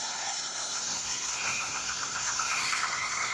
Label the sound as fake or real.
fake